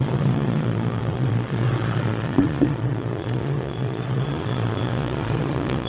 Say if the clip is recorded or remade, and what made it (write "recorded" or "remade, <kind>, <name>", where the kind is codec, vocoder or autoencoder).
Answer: remade, vocoder, Vocos